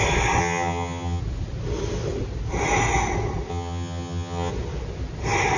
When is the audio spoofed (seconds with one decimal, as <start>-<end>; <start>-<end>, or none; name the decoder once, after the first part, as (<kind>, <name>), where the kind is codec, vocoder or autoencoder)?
0.4-1.2 (vocoder, HiFi-GAN); 3.5-4.5